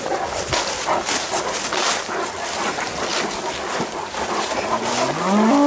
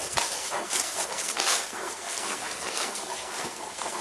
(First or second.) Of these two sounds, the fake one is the second